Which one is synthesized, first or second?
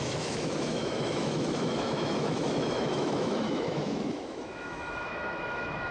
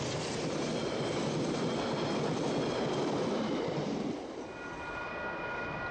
first